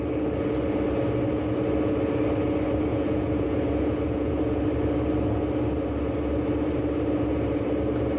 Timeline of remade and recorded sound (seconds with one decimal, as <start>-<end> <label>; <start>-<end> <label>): 0.0-2.9 recorded; 2.9-4.6 remade; 4.6-8.2 recorded